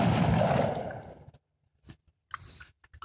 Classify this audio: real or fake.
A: real